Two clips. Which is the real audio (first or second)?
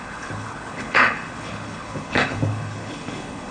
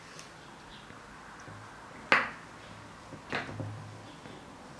second